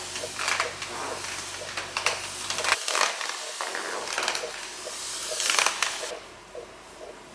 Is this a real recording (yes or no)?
yes